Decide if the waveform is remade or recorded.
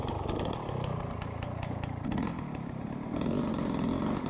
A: recorded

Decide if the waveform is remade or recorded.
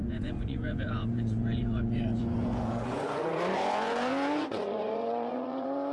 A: remade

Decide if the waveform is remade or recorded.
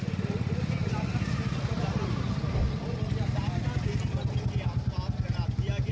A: recorded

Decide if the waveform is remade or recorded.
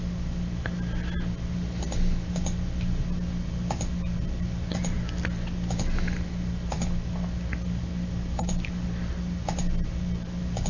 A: recorded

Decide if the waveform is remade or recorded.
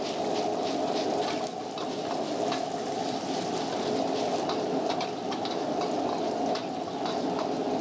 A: recorded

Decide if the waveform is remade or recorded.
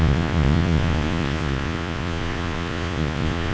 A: remade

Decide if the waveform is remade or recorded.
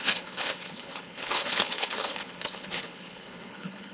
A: remade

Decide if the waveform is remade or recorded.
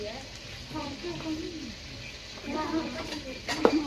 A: recorded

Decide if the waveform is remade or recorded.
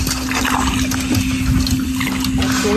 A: recorded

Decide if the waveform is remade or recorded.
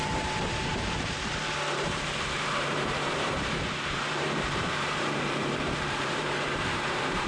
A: remade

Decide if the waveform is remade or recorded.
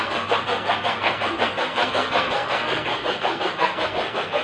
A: remade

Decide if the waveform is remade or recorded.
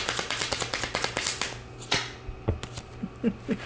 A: recorded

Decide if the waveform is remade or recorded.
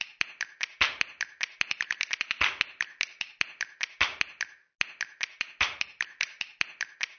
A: recorded